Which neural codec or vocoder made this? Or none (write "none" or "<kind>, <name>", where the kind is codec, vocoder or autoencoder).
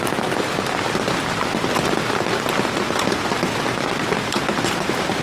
none